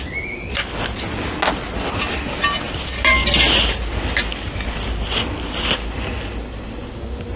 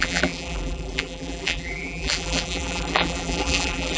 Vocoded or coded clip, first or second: second